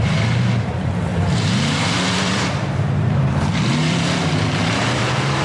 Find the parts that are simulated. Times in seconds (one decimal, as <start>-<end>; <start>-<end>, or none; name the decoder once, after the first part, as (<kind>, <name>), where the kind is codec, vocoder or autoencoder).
0.0-5.4 (vocoder, BigVGAN v2)